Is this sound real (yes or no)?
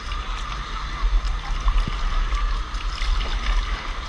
yes